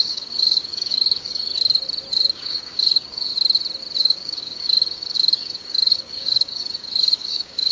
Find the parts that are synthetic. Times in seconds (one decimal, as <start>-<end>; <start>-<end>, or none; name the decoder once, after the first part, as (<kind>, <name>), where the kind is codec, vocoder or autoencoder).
0.0-1.5 (codec, DAC); 2.3-3.3; 4.0-7.7